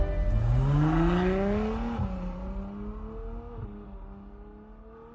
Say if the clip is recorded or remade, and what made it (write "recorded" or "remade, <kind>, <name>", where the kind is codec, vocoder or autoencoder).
recorded